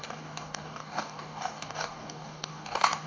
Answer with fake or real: fake